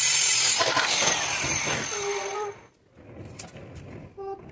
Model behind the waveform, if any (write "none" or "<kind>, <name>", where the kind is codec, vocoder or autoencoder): none